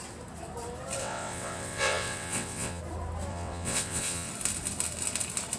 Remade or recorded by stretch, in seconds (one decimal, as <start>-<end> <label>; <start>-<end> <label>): 0.0-1.0 recorded; 1.0-2.8 remade; 2.8-3.3 recorded; 3.3-4.3 remade; 4.3-5.6 recorded

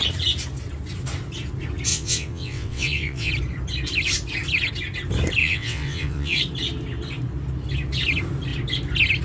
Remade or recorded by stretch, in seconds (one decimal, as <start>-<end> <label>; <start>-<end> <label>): 0.0-1.9 recorded; 1.9-3.3 remade; 3.3-5.4 recorded; 5.4-6.4 remade; 6.4-9.2 recorded